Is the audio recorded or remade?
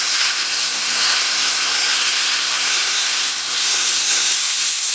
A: remade